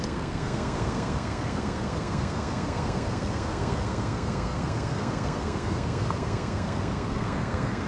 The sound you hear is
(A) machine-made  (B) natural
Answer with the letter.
A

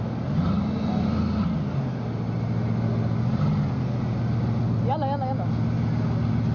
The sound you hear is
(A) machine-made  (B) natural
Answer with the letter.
B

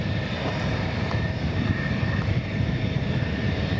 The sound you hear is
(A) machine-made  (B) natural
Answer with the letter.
A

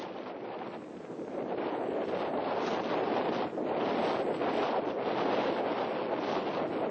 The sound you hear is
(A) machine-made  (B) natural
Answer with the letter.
B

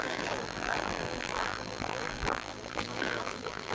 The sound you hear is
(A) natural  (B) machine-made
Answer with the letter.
B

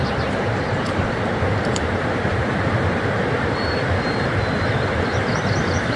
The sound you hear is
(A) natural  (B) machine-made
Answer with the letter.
B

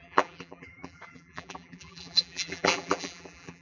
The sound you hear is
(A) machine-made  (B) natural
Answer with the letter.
A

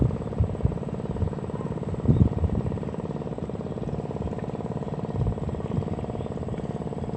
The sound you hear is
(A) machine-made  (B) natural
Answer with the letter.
B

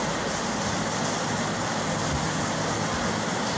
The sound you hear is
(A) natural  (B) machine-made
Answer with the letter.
A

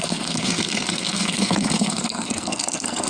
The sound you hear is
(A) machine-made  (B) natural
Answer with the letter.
A